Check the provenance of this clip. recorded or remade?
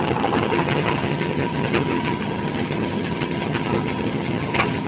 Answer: remade